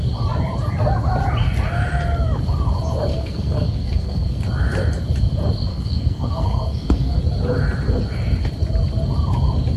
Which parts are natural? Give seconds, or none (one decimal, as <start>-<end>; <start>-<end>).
0.0-3.1; 4.4-5.7; 7.2-9.8